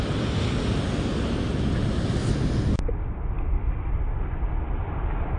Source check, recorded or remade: recorded